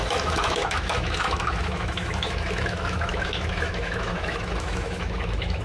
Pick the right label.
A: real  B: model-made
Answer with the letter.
B